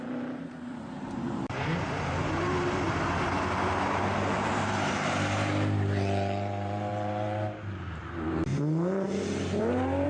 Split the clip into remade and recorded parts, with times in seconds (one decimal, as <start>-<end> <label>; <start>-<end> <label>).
0.0-8.5 remade; 8.5-9.6 recorded; 9.6-10.1 remade